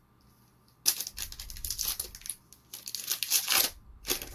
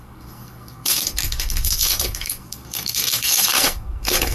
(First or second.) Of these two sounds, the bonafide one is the first